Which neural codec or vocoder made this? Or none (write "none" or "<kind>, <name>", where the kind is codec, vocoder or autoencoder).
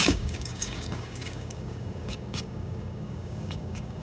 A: codec, DAC